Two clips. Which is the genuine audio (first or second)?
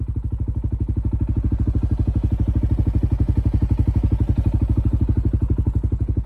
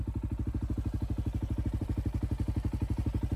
first